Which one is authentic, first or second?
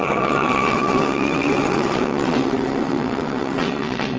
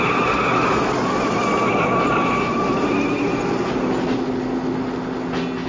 second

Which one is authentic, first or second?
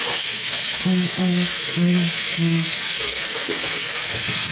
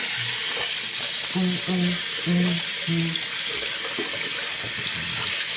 second